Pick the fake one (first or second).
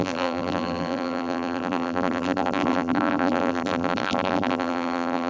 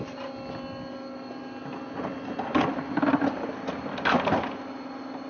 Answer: first